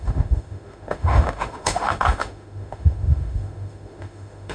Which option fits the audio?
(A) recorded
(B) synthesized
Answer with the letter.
B